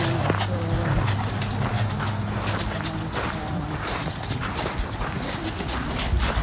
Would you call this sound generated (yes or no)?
no